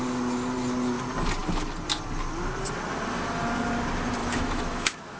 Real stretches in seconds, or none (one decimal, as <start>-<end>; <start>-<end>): 0.0-4.2